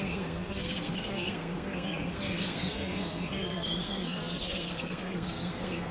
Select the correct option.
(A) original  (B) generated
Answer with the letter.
B